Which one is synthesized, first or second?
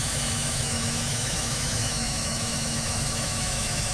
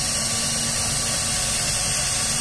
first